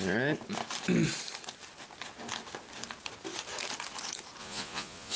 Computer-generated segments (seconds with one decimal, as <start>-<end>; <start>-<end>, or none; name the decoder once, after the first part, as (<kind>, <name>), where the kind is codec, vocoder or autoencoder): 4.4-5.2 (vocoder, Vocos)